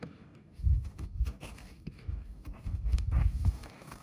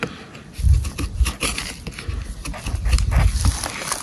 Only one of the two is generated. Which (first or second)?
first